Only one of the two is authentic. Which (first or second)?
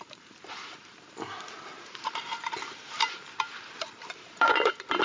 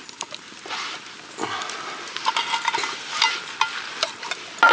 second